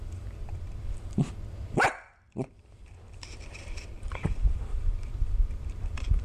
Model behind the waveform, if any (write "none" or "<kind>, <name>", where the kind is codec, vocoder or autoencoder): vocoder, BigVGAN v2